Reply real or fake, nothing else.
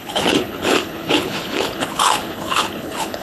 fake